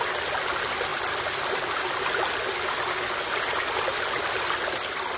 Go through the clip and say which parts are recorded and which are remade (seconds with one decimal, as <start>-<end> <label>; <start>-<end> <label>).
0.0-5.2 recorded